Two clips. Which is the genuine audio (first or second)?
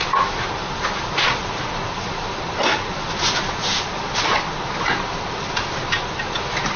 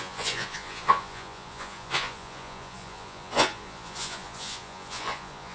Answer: first